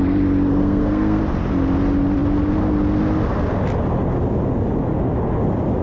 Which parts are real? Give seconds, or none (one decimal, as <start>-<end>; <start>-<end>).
0.0-0.6; 1.2-5.8

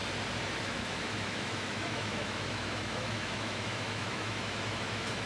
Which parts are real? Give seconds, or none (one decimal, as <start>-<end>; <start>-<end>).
0.0-0.6